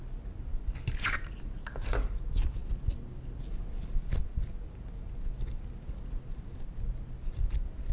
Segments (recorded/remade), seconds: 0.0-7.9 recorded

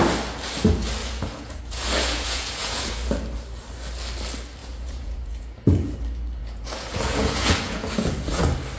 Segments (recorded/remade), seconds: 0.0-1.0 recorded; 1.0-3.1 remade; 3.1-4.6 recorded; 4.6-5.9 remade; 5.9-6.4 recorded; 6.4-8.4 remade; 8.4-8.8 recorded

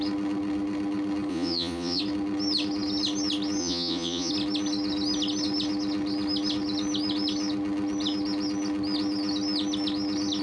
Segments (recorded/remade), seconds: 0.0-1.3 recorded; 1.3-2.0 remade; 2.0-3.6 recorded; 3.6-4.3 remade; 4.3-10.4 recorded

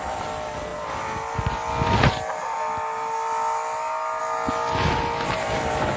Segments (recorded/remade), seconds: 0.0-6.0 recorded